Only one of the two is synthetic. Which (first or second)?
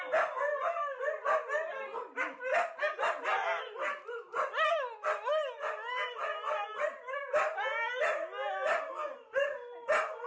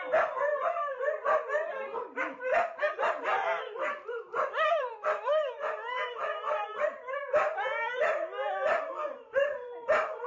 second